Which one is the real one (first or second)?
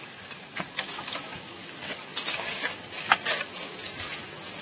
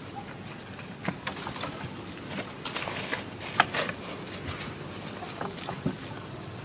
second